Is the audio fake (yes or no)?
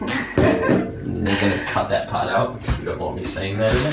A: no